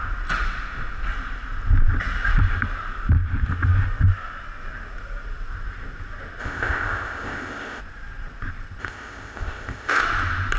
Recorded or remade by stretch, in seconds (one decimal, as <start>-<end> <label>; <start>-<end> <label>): 0.0-6.4 recorded; 6.4-7.8 remade; 7.8-8.8 recorded; 8.8-10.0 remade; 10.0-10.6 recorded